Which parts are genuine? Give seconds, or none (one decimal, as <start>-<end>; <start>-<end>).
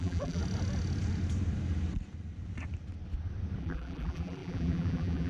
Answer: 0.4-3.6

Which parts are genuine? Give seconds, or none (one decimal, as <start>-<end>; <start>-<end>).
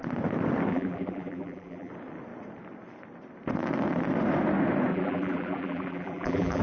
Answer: 0.0-0.7; 1.9-4.9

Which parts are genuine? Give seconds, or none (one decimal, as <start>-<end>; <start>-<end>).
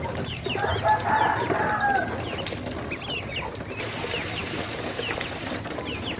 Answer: 0.7-4.4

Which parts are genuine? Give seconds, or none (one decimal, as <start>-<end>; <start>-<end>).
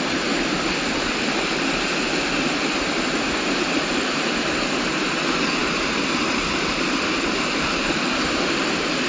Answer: 0.0-9.1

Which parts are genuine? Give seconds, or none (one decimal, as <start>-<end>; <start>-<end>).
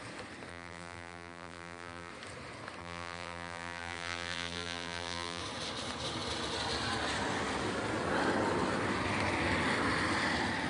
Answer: 0.0-0.5; 2.1-2.8; 5.4-10.7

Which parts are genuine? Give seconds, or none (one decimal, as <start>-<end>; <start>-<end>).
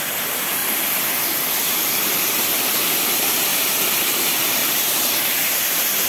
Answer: 0.0-4.6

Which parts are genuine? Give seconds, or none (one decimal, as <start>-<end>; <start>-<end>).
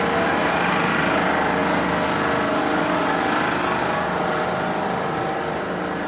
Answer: 0.0-0.4; 0.9-6.1